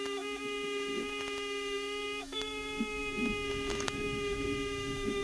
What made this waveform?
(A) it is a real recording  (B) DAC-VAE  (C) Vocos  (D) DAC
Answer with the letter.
B